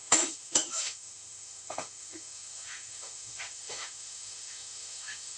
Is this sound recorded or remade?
remade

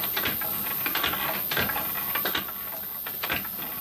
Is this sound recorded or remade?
remade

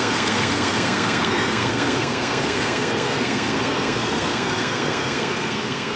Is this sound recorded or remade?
remade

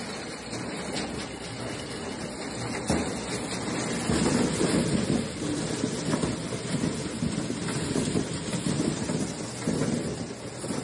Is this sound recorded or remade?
recorded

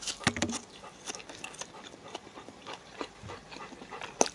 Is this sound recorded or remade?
recorded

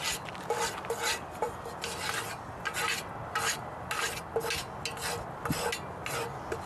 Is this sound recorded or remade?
recorded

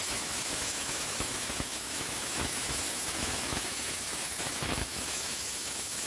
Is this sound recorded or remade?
remade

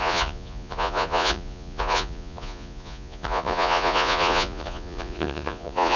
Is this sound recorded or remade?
remade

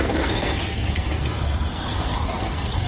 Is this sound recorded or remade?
remade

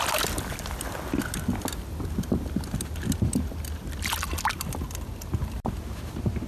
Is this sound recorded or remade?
recorded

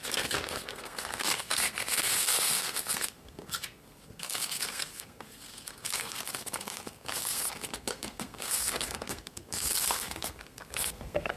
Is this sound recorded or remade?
remade